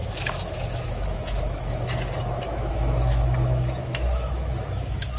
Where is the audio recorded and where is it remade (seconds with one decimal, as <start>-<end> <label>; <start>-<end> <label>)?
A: 0.0-5.2 remade